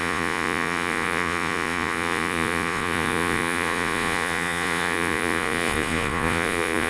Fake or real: fake